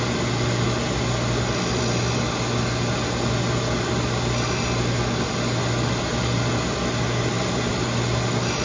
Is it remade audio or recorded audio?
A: recorded